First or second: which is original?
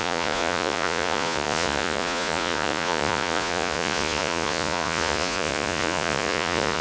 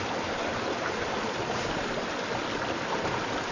second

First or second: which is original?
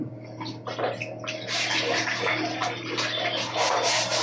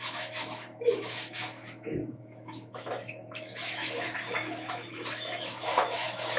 first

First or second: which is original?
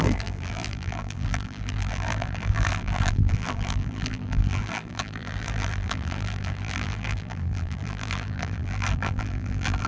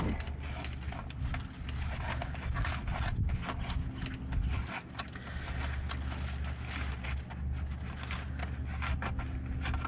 second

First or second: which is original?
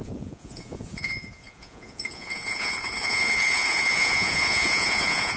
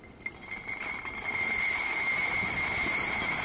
second